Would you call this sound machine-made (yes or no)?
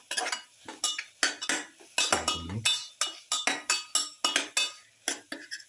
no